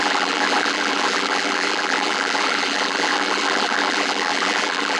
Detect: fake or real fake